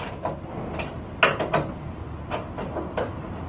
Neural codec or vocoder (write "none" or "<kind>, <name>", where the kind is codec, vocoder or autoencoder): none